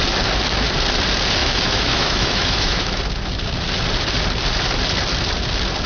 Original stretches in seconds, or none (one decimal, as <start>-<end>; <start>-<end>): 0.0-1.4; 3.0-5.9